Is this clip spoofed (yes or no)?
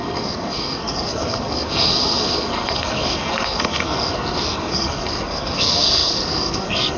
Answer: yes